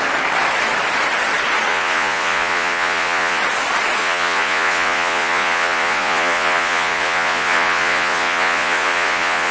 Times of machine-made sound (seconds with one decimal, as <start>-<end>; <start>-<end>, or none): 1.7-3.4; 4.0-9.5